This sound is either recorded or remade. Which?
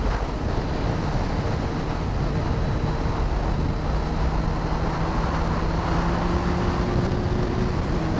recorded